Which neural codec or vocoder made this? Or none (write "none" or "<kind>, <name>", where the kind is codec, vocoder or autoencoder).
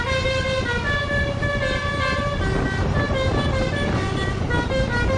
none